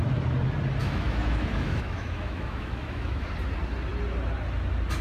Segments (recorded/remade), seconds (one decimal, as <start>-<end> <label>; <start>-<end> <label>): 0.0-0.8 recorded; 0.8-3.3 remade; 3.3-5.0 recorded